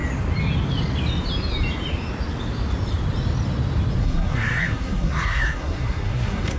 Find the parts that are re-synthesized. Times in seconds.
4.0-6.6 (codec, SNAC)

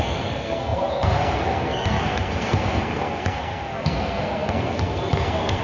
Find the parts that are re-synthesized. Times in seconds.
0.0-5.6 (codec, SNAC)

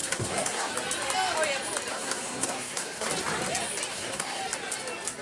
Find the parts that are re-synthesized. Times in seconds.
0.0-0.7 (codec, SNAC); 1.9-3.1; 3.9-4.4

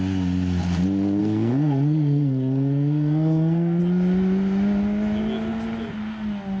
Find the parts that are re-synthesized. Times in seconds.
1.2-3.8 (codec, SNAC)

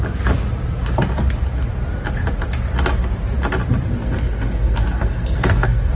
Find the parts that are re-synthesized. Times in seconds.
4.0-5.9 (codec, SNAC)

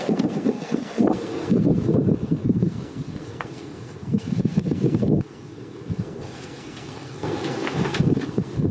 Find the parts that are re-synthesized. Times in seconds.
0.0-8.7 (codec, SNAC)